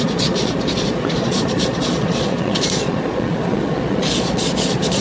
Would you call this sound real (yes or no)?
no